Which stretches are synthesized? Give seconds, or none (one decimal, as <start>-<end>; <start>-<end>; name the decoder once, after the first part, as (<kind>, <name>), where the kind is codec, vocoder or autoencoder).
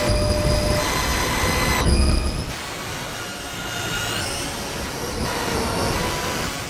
none